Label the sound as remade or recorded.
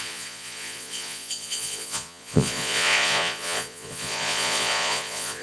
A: remade